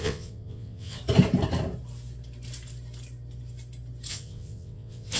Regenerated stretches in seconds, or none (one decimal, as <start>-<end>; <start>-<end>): 0.0-1.0; 4.1-5.2